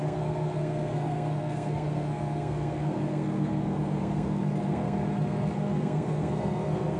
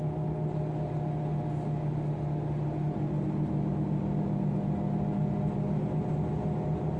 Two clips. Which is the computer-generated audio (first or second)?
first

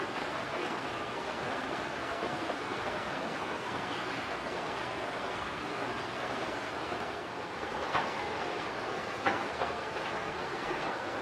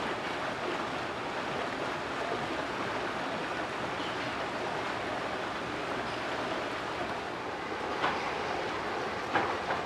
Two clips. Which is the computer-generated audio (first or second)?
first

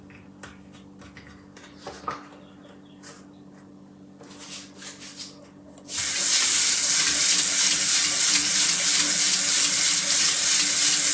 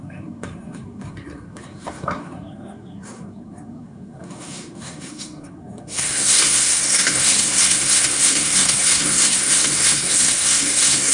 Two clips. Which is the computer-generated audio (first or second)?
second